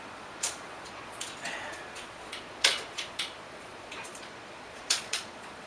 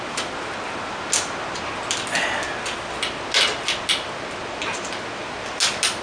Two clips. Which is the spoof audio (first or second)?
first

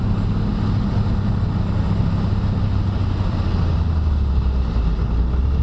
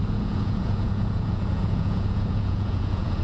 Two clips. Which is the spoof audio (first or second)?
second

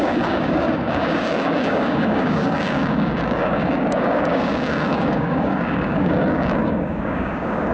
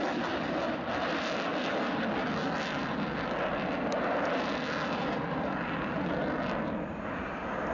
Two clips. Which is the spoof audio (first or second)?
first